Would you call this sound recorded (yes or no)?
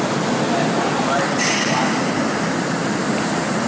yes